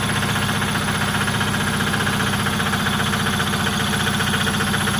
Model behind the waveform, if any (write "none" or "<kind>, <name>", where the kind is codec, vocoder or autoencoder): none